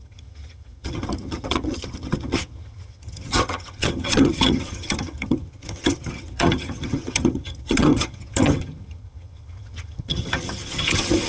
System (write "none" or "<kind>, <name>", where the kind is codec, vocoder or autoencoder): vocoder, HiFi-GAN